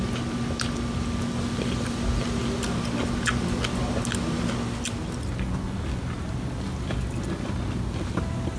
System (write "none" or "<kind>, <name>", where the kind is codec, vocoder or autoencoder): none